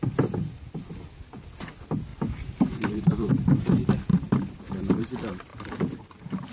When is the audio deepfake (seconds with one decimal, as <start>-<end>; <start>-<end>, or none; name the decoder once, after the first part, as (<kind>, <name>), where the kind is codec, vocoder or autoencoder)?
2.1-3.3 (vocoder, BigVGAN v2); 4.1-4.9; 5.5-6.1